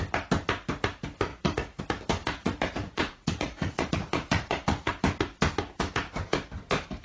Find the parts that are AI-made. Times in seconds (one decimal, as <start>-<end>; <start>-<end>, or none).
1.3-1.8; 2.2-4.9